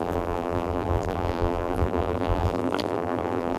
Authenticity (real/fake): fake